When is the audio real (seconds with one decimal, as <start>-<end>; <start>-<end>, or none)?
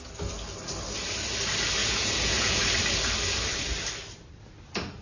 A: 0.0-1.8; 2.6-5.0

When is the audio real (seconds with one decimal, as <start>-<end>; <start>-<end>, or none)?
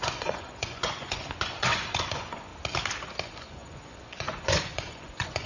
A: 2.5-3.2